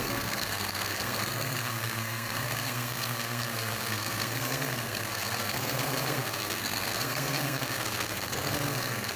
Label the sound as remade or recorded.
remade